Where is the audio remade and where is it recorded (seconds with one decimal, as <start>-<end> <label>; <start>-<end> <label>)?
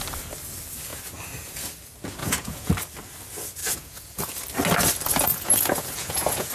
0.0-2.2 recorded; 2.2-2.7 remade; 2.7-3.6 recorded; 3.6-4.3 remade; 4.3-5.1 recorded; 5.1-6.5 remade